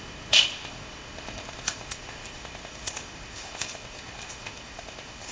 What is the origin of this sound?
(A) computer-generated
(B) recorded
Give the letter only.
A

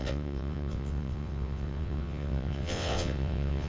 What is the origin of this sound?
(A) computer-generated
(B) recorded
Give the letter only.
A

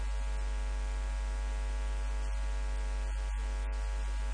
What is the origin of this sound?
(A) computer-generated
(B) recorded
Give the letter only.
B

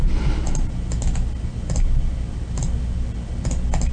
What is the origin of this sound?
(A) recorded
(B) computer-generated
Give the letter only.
A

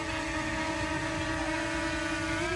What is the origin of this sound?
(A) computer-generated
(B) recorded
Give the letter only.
B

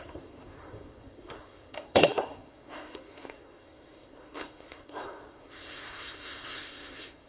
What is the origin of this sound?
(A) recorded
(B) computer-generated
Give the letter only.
B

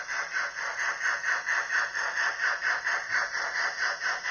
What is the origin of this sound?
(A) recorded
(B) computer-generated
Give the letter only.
A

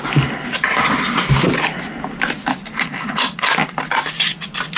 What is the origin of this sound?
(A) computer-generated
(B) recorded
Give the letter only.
B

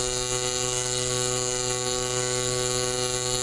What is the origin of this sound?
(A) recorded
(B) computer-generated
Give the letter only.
B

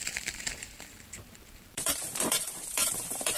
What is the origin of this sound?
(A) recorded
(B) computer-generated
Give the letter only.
B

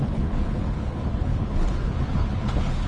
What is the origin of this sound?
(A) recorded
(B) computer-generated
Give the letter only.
B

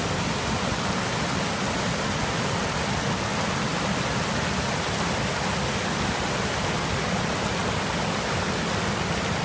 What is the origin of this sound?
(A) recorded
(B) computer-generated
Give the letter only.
A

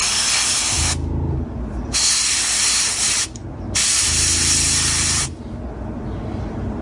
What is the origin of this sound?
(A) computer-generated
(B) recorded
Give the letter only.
B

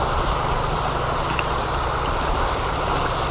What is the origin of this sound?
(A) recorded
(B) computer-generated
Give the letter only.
A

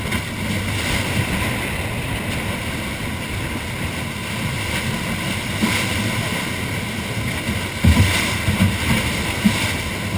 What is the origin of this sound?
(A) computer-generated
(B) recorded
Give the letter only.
B